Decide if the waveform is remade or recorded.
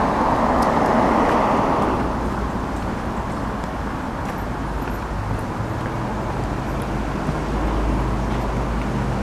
recorded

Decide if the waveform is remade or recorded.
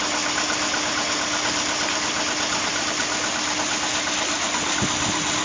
recorded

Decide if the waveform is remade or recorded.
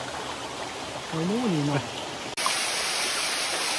recorded